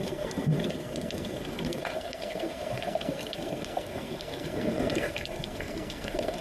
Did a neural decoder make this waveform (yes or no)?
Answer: yes